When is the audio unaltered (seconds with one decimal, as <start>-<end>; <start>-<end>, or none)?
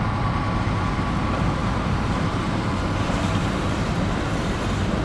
0.0-1.6; 2.7-5.0